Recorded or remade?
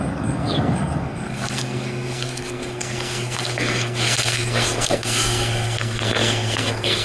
remade